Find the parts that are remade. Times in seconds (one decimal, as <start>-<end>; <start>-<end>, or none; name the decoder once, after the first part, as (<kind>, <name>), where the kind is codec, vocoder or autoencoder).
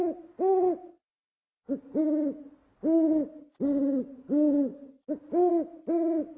none